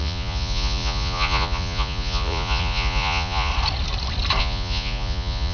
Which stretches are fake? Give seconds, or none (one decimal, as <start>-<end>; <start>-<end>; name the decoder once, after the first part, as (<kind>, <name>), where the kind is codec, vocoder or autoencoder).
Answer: 0.0-3.5 (vocoder, Vocos); 4.4-5.5